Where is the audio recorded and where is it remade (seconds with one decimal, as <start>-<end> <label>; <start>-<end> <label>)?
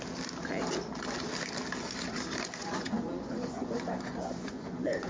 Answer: 0.0-2.6 recorded; 2.6-5.1 remade